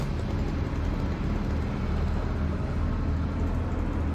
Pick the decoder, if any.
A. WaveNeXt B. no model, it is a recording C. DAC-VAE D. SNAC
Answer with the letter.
B